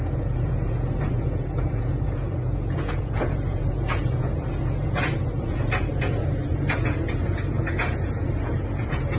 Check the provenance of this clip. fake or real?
fake